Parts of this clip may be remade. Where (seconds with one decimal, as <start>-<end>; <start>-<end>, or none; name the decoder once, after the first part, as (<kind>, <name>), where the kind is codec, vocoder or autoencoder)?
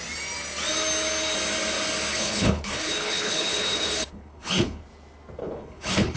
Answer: 2.1-4.8 (codec, HILCodec); 5.4-6.2